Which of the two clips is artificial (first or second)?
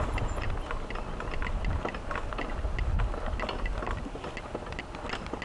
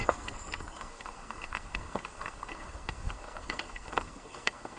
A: second